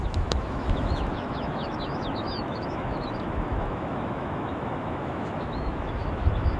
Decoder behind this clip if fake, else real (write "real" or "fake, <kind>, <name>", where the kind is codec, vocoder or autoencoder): fake, autoencoder, DAC-VAE